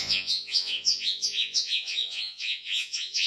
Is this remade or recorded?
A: remade